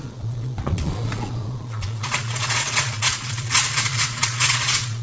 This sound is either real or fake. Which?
fake